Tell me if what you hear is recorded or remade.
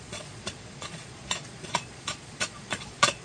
remade